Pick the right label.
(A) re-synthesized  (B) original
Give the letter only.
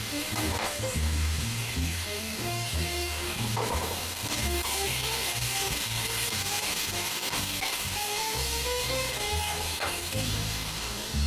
A